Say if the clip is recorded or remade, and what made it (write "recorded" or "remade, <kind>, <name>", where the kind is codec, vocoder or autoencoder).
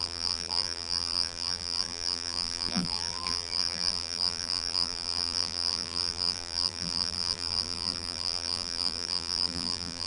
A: remade, vocoder, BigVGAN v2